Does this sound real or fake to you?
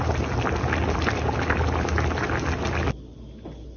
real